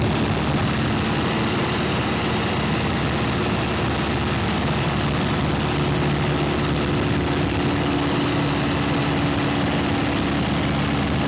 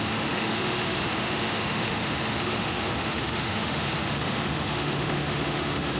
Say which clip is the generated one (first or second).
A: second